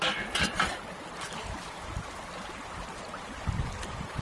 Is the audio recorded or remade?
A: recorded